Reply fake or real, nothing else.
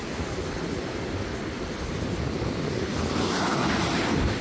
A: real